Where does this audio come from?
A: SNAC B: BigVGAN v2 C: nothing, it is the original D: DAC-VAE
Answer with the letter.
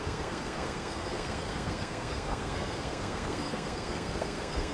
A